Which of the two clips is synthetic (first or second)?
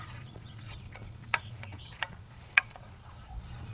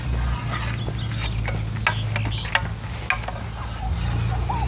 first